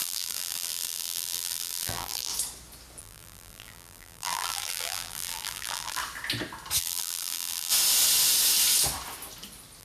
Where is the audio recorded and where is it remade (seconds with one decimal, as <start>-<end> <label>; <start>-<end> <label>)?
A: 0.0-2.3 remade; 2.3-3.0 recorded; 3.0-6.0 remade; 6.0-6.8 recorded; 6.8-7.7 remade; 7.7-9.8 recorded